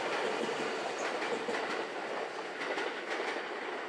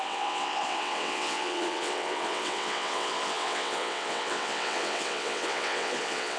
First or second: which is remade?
second